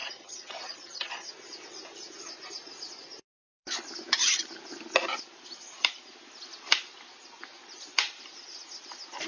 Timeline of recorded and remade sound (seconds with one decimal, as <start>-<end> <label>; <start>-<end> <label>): 0.0-1.3 remade; 1.3-9.3 recorded